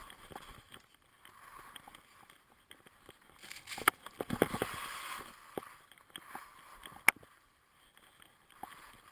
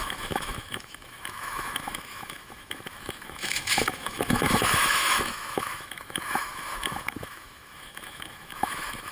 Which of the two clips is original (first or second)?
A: first